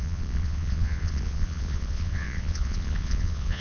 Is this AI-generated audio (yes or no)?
yes